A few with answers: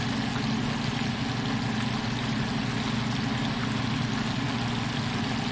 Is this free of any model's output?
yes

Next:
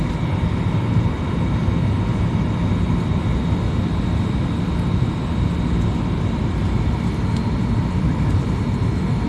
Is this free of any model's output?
yes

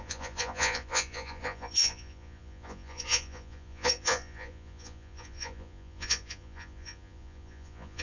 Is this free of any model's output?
no